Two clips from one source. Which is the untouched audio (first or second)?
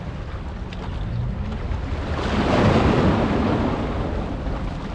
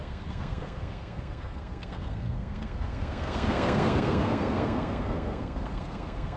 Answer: first